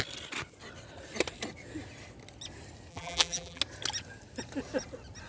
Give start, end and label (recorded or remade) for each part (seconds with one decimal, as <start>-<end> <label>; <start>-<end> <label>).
0.0-2.9 recorded; 2.9-3.6 remade; 3.6-5.3 recorded